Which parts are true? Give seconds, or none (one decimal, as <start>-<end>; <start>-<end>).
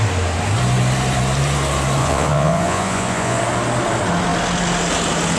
0.0-2.0; 3.4-5.4